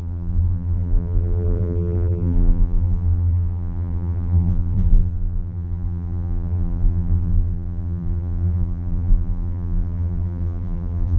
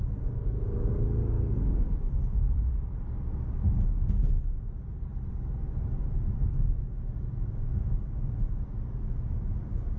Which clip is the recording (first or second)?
second